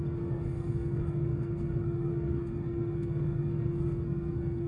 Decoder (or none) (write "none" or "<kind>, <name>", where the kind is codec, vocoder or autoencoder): codec, SNAC